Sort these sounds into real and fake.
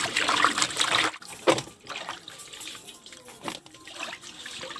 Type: real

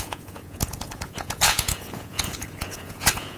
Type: fake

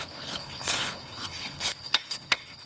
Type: fake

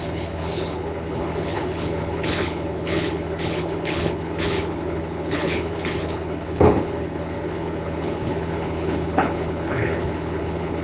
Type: fake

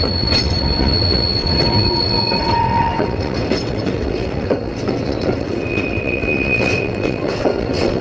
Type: fake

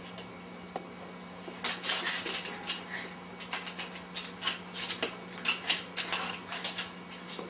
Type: real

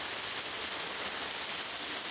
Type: real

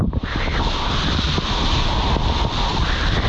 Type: real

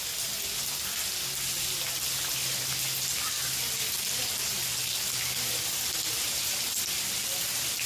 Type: real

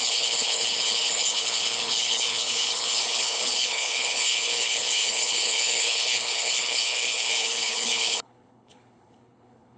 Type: fake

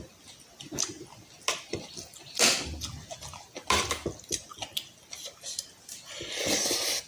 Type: real